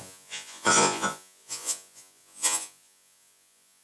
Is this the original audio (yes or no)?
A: no